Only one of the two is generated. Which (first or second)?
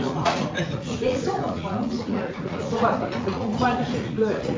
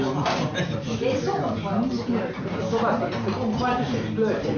first